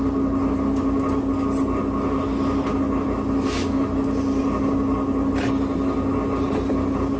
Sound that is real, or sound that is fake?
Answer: real